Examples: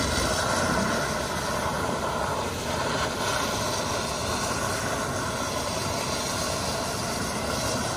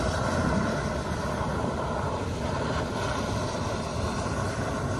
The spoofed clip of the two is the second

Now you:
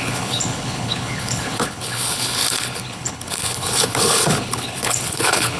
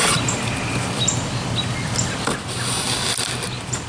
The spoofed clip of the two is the first